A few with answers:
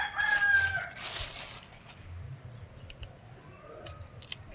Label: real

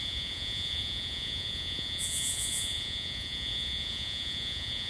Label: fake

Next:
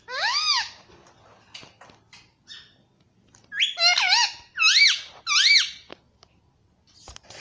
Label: real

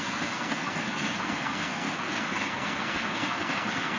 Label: fake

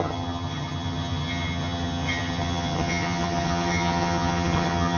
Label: fake